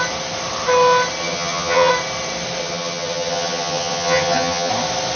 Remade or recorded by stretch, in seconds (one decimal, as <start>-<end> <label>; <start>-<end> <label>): 0.0-1.2 recorded; 1.2-1.9 remade; 1.9-2.6 recorded; 2.6-4.7 remade; 4.7-5.2 recorded